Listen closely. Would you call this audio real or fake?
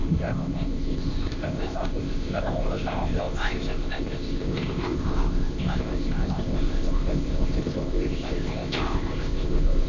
fake